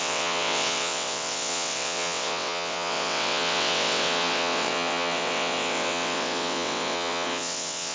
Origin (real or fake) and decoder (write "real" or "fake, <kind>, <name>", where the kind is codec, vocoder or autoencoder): fake, vocoder, WaveNeXt